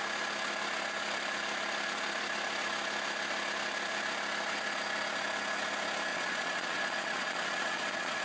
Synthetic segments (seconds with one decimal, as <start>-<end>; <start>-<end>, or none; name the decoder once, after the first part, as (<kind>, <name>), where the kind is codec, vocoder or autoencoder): 6.1-8.2 (vocoder, Vocos)